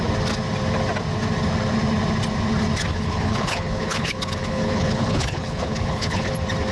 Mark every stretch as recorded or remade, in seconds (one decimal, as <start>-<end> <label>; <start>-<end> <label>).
0.0-2.9 recorded; 2.9-6.3 remade; 6.3-6.7 recorded